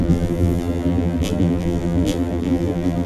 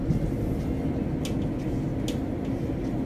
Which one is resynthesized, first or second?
first